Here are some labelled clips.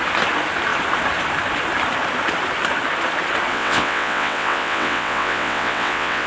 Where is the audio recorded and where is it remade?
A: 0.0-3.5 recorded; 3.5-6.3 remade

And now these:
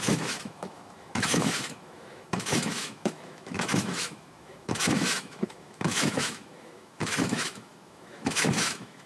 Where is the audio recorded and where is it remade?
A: 0.0-9.1 remade

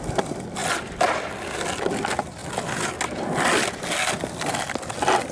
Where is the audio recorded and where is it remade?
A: 0.0-5.3 recorded

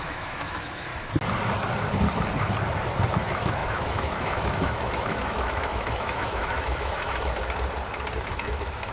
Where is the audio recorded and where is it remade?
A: 0.0-0.9 remade; 0.9-3.1 recorded; 3.1-7.4 remade; 7.4-8.3 recorded; 8.3-8.9 remade

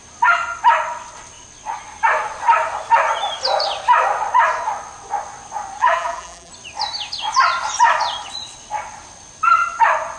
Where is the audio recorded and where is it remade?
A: 0.0-5.8 recorded; 5.8-6.5 remade; 6.5-10.2 recorded

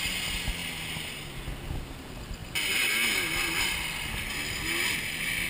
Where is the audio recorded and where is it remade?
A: 0.0-5.5 recorded

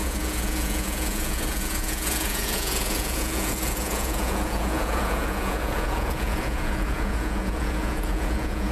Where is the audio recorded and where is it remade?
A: 0.0-8.7 remade